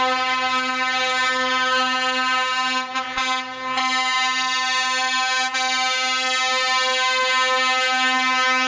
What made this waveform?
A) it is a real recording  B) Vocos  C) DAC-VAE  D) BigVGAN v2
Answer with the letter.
A